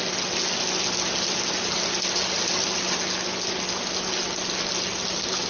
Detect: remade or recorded recorded